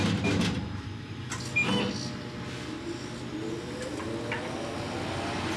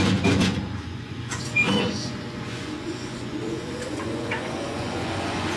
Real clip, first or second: first